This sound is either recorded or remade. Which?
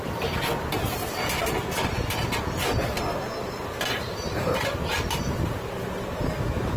remade